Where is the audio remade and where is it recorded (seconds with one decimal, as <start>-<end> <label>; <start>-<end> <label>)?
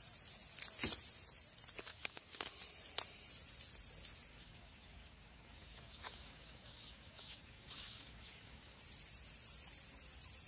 0.0-1.9 recorded; 1.9-2.5 remade; 2.5-4.3 recorded; 4.3-8.8 remade; 8.8-10.5 recorded